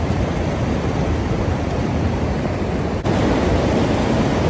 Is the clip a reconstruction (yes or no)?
no